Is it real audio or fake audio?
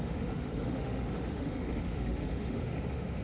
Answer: fake